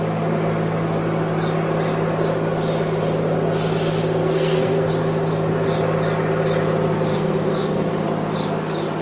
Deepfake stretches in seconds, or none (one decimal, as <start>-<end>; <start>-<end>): 4.2-4.9; 7.1-7.9